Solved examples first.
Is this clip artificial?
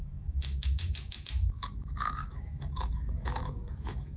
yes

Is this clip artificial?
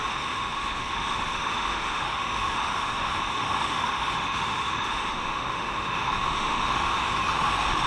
yes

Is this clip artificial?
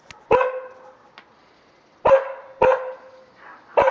no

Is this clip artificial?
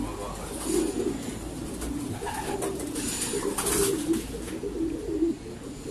no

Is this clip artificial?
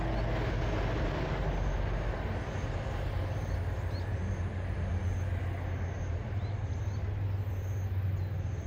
no